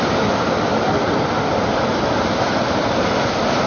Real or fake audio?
fake